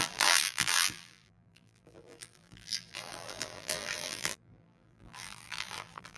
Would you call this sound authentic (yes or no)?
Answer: no